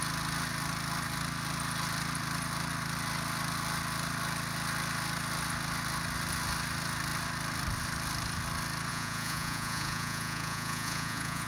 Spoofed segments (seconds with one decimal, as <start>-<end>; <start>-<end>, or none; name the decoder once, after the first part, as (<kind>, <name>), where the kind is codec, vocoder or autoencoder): 8.9-11.5 (vocoder, Vocos)